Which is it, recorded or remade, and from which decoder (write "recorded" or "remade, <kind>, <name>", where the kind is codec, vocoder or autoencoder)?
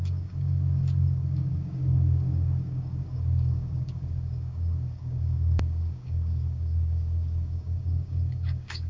remade, codec, DAC